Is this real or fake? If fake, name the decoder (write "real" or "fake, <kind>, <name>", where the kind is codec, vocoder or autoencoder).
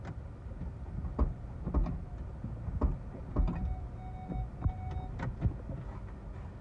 real